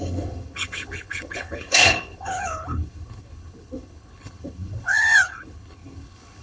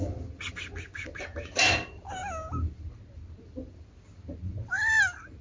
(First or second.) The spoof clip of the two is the first